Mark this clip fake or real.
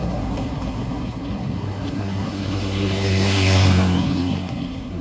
fake